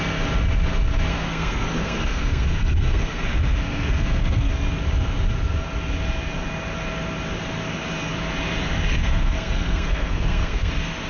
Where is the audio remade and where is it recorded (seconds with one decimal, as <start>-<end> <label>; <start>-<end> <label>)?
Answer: 0.0-1.1 recorded; 1.1-4.5 remade; 4.5-8.9 recorded; 8.9-10.7 remade; 10.7-11.1 recorded